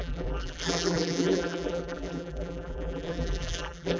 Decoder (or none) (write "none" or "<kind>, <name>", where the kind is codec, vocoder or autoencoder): vocoder, BigVGAN v2